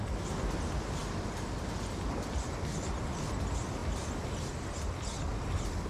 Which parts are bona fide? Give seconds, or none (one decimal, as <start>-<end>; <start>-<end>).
0.0-5.9